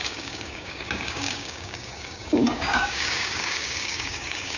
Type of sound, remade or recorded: remade